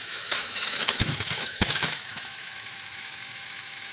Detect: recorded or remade remade